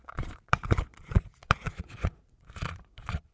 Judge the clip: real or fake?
fake